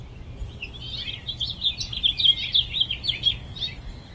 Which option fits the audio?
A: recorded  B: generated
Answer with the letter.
A